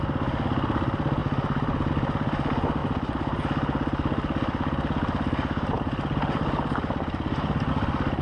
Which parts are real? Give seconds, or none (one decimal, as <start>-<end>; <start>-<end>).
0.0-8.2